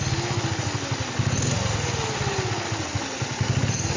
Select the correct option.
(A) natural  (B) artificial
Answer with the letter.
A